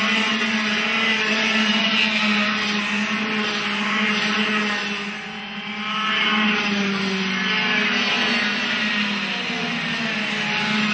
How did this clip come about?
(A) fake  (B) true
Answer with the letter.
B